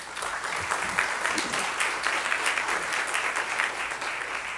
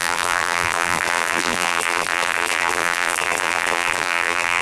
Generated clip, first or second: second